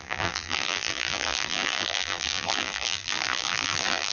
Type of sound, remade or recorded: remade